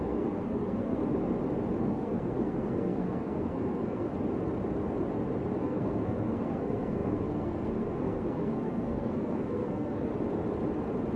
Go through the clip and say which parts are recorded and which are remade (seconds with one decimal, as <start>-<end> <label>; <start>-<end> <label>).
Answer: 0.0-1.0 remade; 1.0-1.8 recorded; 1.8-4.1 remade; 4.1-5.6 recorded; 5.6-10.1 remade; 10.1-11.2 recorded